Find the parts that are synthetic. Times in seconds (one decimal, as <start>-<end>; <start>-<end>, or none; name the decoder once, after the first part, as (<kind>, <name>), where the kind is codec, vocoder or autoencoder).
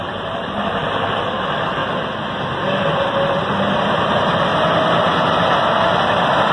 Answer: 0.0-1.8 (vocoder, BigVGAN v2); 2.5-4.5; 6.0-6.5